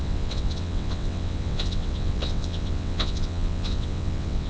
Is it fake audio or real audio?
fake